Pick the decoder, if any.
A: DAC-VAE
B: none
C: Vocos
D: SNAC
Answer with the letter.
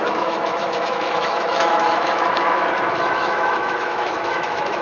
A